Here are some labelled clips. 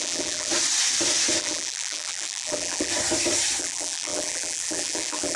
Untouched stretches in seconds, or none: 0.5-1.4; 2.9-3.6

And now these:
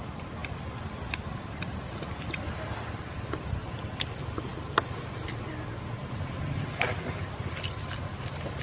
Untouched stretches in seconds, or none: 0.0-0.4; 3.5-4.5; 5.3-8.6

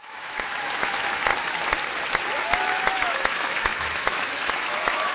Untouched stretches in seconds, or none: 1.3-2.6